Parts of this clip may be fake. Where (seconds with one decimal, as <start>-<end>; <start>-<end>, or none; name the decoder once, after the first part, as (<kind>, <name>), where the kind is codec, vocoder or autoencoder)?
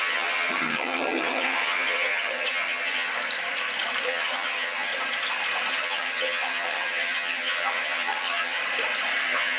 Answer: 0.0-3.1 (vocoder, HiFi-GAN); 4.1-4.9; 5.7-8.6; 9.2-9.6